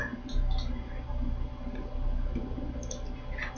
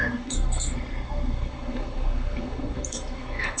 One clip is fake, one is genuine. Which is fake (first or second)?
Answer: second